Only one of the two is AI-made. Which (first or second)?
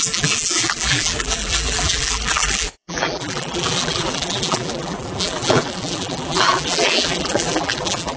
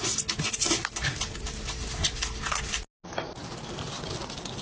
first